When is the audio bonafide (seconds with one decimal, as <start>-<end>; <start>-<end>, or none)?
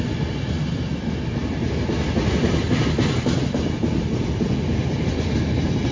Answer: 0.0-5.9